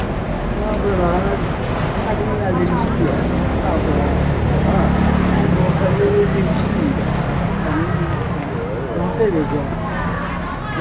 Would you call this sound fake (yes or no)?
no